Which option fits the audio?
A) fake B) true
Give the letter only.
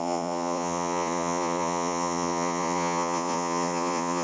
A